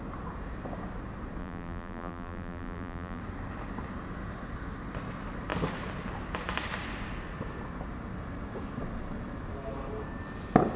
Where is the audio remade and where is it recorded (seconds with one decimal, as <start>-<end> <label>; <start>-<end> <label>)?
0.0-1.4 recorded; 1.4-3.2 remade; 3.2-10.8 recorded